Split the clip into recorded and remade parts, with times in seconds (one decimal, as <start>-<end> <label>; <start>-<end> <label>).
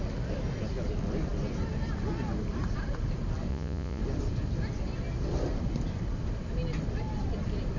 0.0-3.5 recorded; 3.5-4.0 remade; 4.0-7.8 recorded